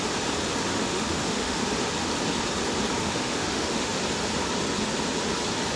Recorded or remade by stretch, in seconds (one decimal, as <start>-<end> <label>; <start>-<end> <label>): 0.0-0.7 recorded; 0.7-1.6 remade; 1.6-3.0 recorded; 3.0-4.0 remade; 4.0-5.8 recorded

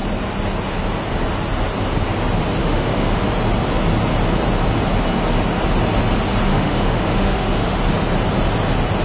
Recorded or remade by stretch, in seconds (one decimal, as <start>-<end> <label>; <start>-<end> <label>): 0.0-2.6 recorded; 2.6-3.2 remade; 3.2-6.5 recorded; 6.5-7.8 remade; 7.8-9.0 recorded